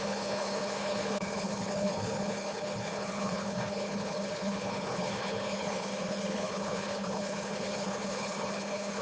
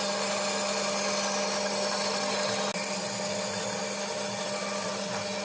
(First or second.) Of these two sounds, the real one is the second